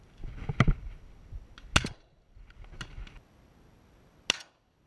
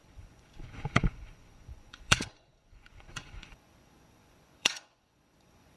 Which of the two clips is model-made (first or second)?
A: second